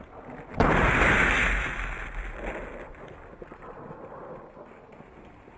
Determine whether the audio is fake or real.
real